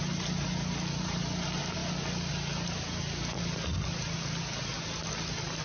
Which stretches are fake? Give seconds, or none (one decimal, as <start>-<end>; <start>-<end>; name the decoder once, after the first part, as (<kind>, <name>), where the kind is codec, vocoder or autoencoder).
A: none